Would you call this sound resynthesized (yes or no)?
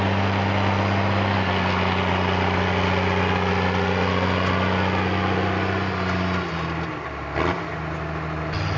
no